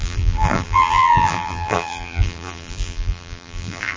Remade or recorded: remade